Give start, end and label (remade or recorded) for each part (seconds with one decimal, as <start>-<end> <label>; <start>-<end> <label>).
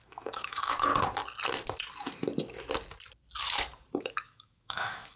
0.0-0.9 remade; 0.9-4.0 recorded; 4.0-5.2 remade